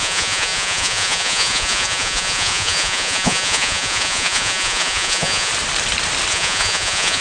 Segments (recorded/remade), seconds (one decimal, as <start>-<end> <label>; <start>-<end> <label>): 0.0-5.5 remade; 5.5-6.3 recorded; 6.3-7.2 remade